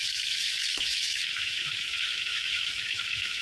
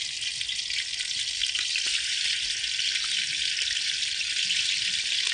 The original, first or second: second